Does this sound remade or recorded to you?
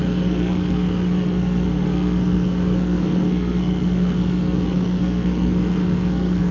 remade